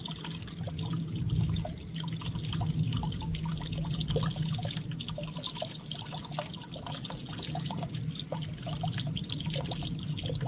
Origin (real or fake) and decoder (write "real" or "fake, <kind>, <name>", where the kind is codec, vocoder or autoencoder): real